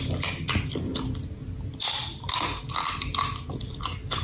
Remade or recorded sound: recorded